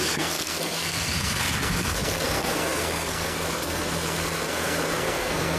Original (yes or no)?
no